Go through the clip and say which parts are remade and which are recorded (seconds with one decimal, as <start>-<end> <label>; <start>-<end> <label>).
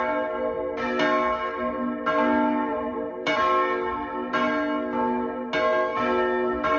0.0-2.7 recorded; 2.7-3.4 remade; 3.4-6.8 recorded